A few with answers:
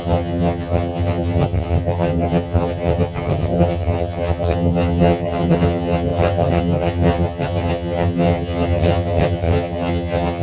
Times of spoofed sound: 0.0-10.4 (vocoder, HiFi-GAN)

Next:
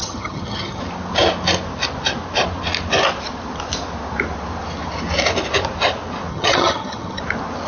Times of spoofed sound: 0.0-0.8 (vocoder, HiFi-GAN); 6.3-7.2